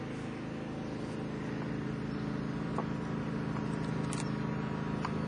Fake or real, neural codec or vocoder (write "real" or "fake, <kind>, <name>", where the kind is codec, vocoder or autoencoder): real